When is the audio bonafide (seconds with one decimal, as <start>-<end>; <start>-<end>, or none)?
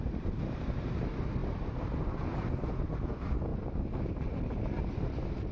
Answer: 0.0-3.5; 4.8-5.5